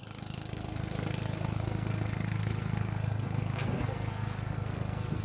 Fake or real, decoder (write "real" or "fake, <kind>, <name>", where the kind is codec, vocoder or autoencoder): fake, codec, SNAC